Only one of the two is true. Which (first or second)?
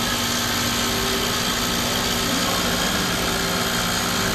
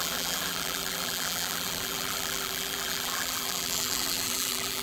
first